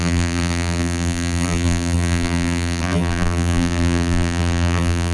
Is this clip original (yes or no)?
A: no